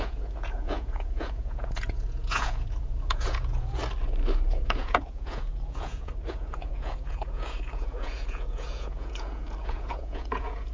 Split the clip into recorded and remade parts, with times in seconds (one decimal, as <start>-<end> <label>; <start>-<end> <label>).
0.0-3.8 remade; 3.8-4.5 recorded; 4.5-10.7 remade